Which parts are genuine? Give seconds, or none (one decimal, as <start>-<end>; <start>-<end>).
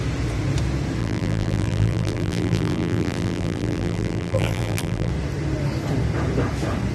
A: 0.0-1.0; 5.1-6.9